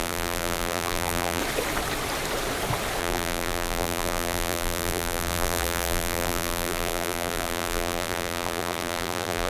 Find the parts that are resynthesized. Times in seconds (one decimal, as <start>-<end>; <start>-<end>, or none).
0.0-1.4; 3.0-9.5